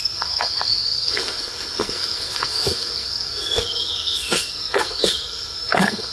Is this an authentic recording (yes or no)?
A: no